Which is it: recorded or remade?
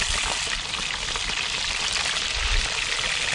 recorded